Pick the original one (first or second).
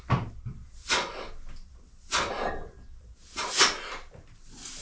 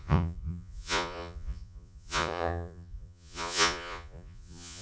first